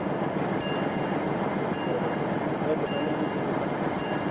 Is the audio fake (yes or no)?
no